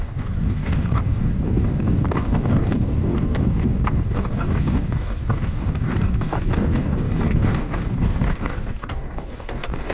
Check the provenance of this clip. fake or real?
fake